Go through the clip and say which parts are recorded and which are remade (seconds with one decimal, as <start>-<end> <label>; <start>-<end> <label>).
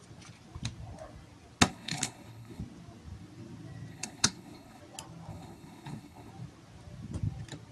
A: 0.0-1.7 recorded; 1.7-2.6 remade; 2.6-3.9 recorded; 3.9-4.8 remade; 4.8-5.3 recorded; 5.3-6.3 remade; 6.3-7.7 recorded